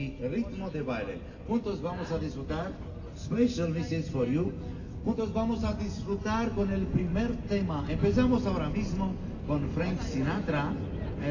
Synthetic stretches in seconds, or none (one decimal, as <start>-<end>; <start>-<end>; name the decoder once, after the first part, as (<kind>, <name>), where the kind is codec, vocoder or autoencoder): none